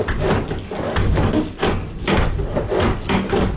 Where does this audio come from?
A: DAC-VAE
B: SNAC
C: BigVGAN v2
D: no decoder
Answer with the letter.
D